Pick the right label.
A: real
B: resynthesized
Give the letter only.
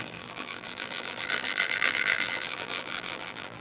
B